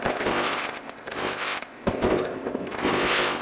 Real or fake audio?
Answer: fake